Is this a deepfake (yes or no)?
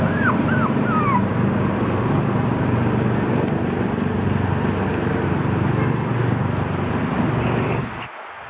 no